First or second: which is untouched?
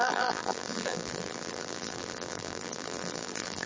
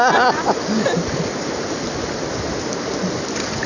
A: second